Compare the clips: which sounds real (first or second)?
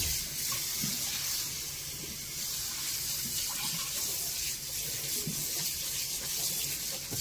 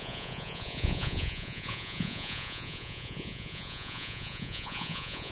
first